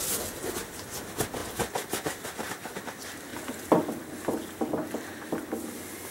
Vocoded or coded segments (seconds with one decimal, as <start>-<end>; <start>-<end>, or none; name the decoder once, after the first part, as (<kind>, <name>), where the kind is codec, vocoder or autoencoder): none